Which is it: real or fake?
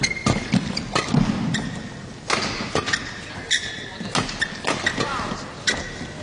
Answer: real